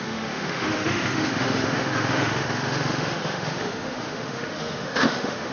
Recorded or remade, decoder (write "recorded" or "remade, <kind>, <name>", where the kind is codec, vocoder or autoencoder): remade, autoencoder, DAC-VAE